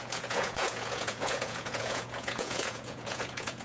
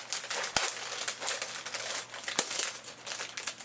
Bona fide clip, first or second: second